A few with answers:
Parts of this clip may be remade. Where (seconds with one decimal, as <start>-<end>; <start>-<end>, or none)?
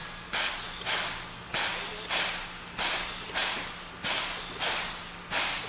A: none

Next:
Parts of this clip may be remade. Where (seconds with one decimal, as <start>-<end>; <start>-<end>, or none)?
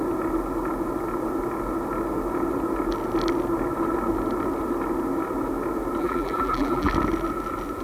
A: 6.0-6.9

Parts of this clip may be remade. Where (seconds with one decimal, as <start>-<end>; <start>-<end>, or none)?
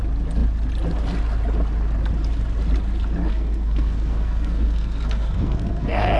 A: 3.3-6.2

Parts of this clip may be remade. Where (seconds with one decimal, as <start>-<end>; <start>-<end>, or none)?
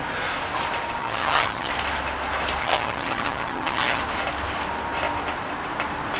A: 1.0-1.7; 2.6-4.0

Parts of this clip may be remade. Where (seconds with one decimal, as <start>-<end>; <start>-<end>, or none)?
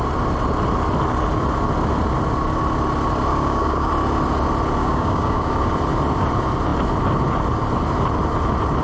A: 3.3-3.9; 4.8-5.5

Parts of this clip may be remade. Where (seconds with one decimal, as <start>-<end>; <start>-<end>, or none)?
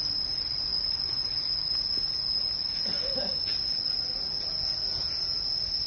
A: none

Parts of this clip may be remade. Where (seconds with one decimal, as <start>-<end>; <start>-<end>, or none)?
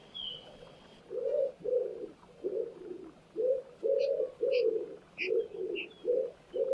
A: 0.0-1.0